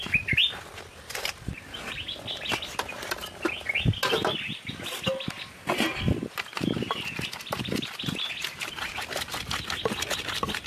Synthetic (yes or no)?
no